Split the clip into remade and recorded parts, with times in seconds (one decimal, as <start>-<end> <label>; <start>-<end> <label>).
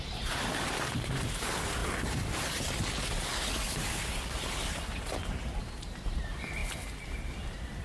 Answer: 0.0-1.8 remade; 1.8-5.3 recorded; 5.3-7.8 remade